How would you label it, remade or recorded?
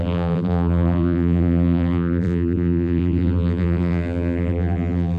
remade